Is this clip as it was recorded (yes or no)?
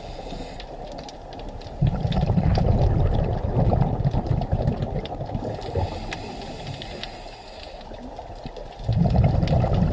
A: yes